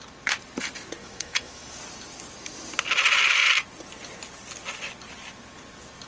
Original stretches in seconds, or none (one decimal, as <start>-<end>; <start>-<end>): 0.0-1.0; 1.8-6.1